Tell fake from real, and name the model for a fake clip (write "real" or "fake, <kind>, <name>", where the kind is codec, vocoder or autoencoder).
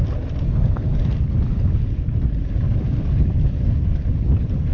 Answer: real